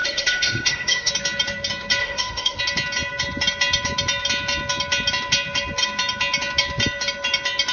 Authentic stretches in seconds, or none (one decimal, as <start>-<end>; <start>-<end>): 1.1-2.0; 2.6-7.7